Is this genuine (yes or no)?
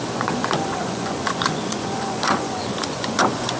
no